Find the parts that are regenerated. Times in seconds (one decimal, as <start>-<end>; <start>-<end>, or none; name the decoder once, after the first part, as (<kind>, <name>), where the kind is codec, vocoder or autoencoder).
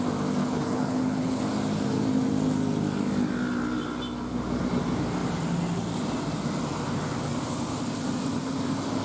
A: 0.4-1.4 (codec, HILCodec)